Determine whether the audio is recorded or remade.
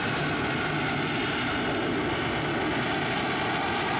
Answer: recorded